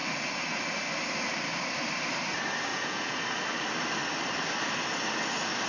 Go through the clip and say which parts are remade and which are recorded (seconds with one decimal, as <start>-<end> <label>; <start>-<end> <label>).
0.0-2.7 recorded; 2.7-3.2 remade; 3.2-5.7 recorded